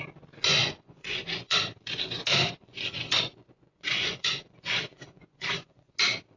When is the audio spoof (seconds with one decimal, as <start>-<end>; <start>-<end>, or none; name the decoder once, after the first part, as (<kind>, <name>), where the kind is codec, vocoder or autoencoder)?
0.5-1.6 (vocoder, Vocos); 2.3-6.0